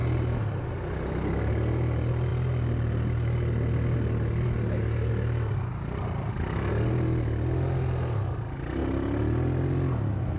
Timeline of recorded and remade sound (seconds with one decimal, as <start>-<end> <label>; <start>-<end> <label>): 0.0-10.4 recorded